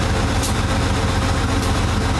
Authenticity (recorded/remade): recorded